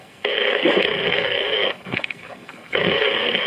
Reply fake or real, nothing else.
fake